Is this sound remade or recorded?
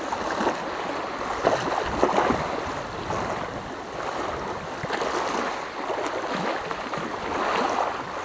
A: recorded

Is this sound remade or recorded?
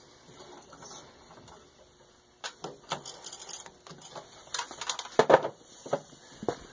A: recorded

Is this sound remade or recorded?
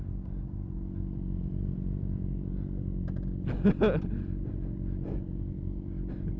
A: recorded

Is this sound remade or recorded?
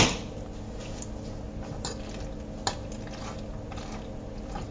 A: recorded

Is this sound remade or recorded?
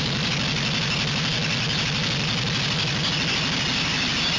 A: recorded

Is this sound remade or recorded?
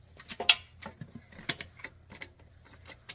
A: recorded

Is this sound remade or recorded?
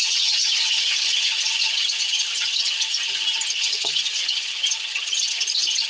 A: remade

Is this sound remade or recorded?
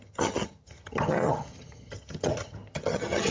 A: remade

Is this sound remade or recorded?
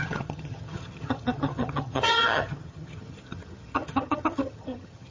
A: remade